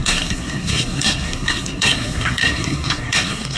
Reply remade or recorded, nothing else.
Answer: remade